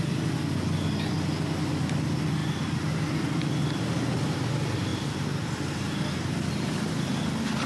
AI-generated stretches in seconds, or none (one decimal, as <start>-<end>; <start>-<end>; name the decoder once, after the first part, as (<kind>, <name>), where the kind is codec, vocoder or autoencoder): none